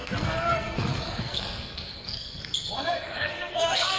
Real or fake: fake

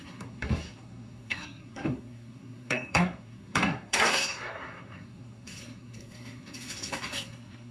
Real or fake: fake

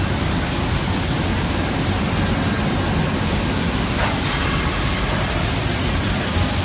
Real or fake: real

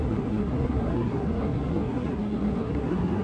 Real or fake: fake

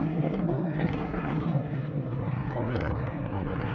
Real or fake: fake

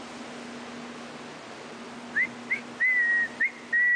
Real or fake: real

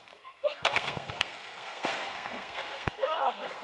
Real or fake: fake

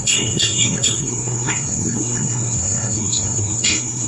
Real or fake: fake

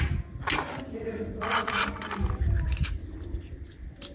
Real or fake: real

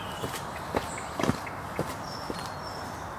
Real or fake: real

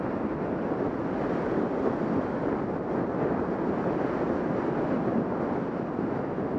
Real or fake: real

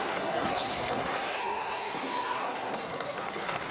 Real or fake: fake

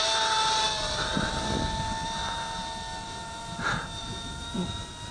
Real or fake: real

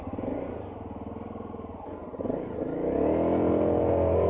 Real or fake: real